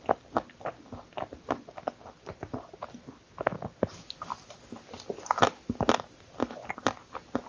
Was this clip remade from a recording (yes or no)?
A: no